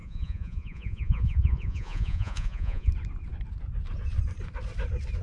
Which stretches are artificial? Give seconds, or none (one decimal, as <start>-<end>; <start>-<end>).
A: 0.0-2.9